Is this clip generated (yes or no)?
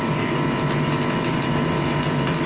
no